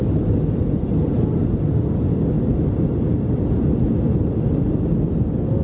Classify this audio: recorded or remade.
recorded